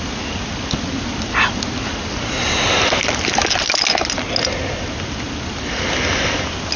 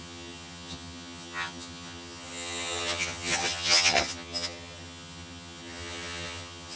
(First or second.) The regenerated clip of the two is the second